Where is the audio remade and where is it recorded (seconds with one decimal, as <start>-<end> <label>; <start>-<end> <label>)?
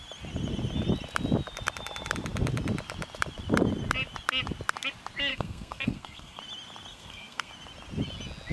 0.0-5.3 recorded; 5.3-6.4 remade; 6.4-6.9 recorded; 6.9-7.5 remade; 7.5-8.5 recorded